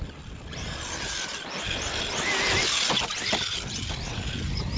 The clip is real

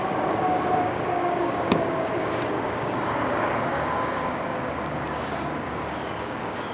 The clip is fake